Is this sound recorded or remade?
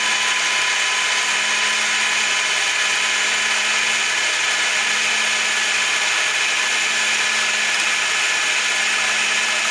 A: recorded